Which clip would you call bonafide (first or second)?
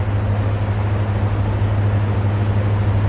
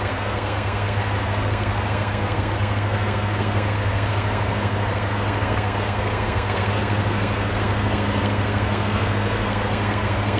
first